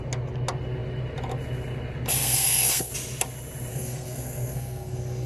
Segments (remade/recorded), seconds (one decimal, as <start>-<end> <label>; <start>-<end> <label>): 0.0-2.1 recorded; 2.1-2.9 remade; 2.9-3.7 recorded; 3.7-5.3 remade